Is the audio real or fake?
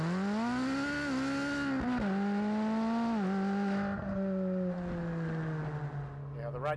real